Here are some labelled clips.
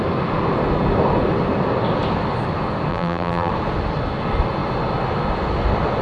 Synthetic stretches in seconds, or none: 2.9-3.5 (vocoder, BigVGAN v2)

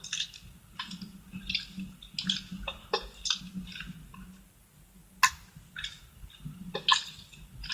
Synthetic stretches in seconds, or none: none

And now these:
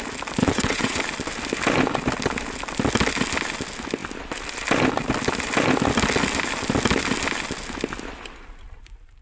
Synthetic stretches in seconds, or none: 0.4-1.0 (vocoder, WaveNeXt)

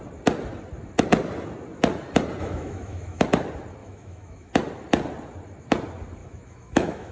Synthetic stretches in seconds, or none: 2.4-3.2 (autoencoder, DAC-VAE); 3.8-4.5; 6.2-7.1